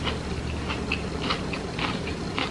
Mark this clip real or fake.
real